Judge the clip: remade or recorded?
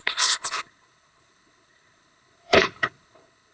remade